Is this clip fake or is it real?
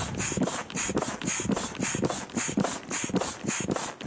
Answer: real